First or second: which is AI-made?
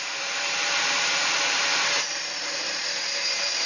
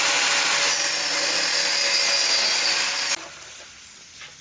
first